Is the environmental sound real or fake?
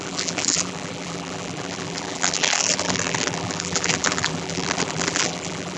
fake